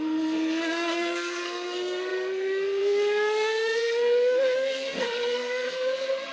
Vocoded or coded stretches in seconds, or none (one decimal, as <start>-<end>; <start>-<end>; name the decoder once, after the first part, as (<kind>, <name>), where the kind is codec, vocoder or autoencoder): 0.0-6.3 (codec, SNAC)